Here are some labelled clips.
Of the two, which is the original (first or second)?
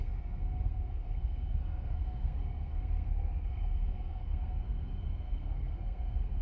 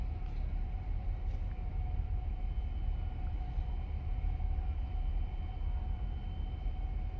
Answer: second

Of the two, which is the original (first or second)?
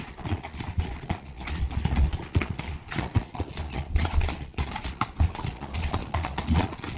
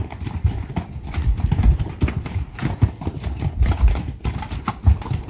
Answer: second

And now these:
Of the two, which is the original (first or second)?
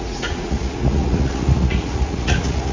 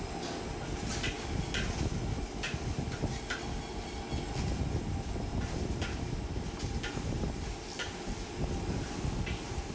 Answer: second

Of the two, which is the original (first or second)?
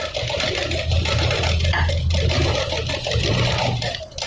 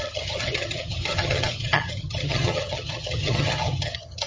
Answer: first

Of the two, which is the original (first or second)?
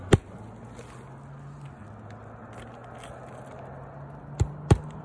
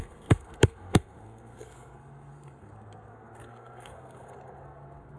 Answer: first